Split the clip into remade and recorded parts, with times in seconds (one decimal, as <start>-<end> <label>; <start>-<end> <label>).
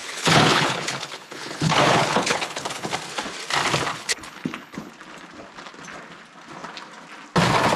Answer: 0.0-2.9 remade; 2.9-3.9 recorded; 3.9-4.9 remade; 4.9-7.8 recorded